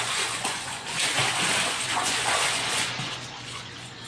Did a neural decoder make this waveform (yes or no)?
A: yes